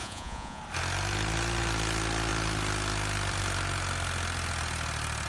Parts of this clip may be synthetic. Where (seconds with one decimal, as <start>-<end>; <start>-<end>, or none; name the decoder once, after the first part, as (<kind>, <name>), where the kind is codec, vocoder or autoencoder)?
0.0-0.6 (vocoder, Vocos)

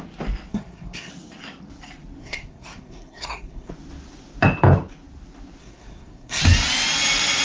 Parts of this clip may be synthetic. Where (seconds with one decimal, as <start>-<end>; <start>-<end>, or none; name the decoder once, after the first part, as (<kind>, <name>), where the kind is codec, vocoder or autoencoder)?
0.5-1.1 (codec, SNAC); 2.2-3.7; 5.6-6.4